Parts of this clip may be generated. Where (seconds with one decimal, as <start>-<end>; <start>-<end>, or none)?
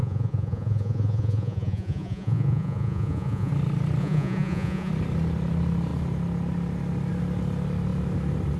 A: 0.0-3.5; 4.0-4.9